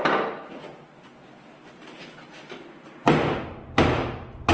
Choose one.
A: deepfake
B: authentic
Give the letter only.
B